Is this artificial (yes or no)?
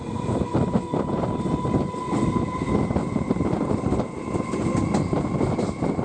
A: no